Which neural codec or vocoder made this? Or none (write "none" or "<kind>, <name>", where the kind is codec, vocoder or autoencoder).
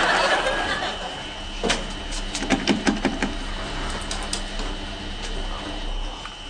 none